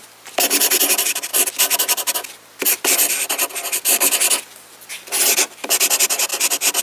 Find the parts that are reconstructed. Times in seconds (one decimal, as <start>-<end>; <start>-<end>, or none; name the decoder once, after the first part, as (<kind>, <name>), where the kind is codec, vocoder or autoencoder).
0.0-1.3 (vocoder, BigVGAN v2); 5.2-6.3